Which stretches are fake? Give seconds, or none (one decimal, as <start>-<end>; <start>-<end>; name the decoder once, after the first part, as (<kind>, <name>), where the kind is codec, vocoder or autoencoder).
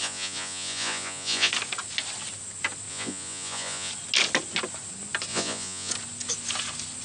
0.0-1.5 (vocoder, Vocos); 2.9-3.9; 5.3-5.9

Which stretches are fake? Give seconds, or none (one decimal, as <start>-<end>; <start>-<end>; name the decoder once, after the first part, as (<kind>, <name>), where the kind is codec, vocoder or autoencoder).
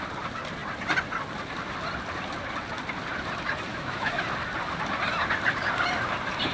3.7-4.2 (autoencoder, DAC-VAE)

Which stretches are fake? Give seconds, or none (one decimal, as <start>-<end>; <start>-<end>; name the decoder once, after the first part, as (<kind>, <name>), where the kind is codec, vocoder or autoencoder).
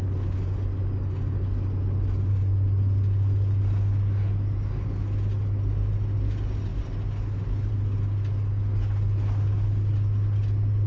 none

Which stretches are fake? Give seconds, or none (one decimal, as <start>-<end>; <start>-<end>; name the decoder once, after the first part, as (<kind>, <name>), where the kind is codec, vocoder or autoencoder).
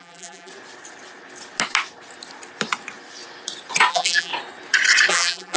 0.0-0.5 (vocoder, BigVGAN v2); 3.9-4.3; 5.1-5.6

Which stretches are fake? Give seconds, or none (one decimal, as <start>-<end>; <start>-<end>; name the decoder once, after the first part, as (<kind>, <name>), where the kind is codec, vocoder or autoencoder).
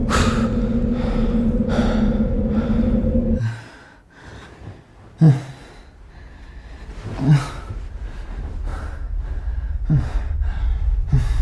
none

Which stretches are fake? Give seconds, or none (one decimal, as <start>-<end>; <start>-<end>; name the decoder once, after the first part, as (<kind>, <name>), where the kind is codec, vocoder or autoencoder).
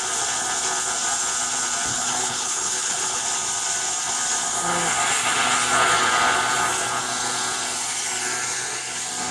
1.9-3.2 (codec, HILCodec)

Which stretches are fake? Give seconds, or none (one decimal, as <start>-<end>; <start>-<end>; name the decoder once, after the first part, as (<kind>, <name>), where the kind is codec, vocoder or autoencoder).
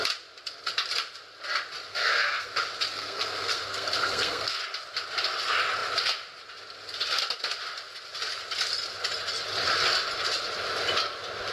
1.9-2.5 (codec, SNAC); 2.9-4.6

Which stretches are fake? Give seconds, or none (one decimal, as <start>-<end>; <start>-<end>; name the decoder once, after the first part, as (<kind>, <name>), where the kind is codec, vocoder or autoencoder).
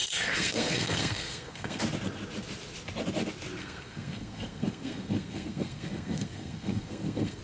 0.0-1.8 (codec, SNAC); 3.6-7.4